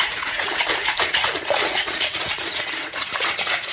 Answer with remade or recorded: remade